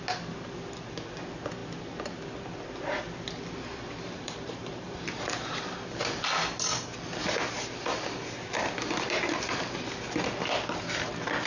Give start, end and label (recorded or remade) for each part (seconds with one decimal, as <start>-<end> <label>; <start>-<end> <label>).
0.0-3.7 recorded; 3.7-5.7 remade; 5.7-11.5 recorded